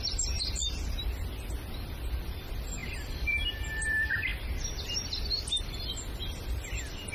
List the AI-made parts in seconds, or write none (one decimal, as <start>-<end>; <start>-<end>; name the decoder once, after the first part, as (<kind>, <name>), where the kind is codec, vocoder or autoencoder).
0.0-0.6 (vocoder, BigVGAN v2); 1.7-4.3; 5.9-7.1